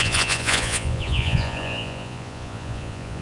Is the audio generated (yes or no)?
yes